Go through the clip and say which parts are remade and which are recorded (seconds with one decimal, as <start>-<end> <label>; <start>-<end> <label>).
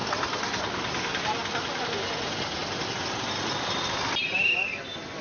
0.0-5.2 recorded